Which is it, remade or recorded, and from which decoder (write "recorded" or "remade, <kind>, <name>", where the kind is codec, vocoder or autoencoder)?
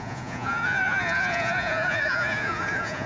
remade, vocoder, Vocos